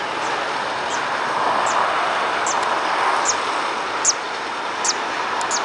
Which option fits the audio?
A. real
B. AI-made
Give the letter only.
A